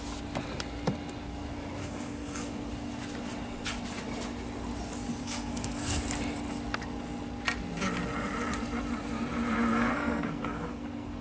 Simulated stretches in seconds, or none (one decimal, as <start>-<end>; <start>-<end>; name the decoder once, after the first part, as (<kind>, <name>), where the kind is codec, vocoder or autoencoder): 1.8-2.7 (codec, SNAC); 5.2-6.0; 9.9-11.2